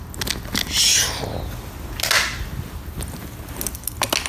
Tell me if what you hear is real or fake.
real